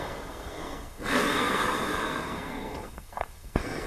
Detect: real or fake fake